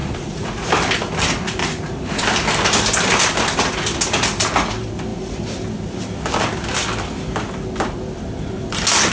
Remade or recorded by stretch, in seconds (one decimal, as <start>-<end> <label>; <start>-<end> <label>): 0.0-0.7 remade; 0.7-1.6 recorded; 1.6-2.2 remade; 2.2-9.1 recorded